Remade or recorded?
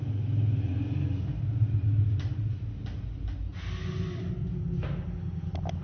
recorded